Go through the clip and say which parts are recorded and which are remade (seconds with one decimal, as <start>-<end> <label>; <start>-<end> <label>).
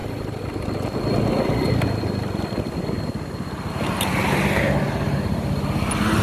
0.0-6.2 recorded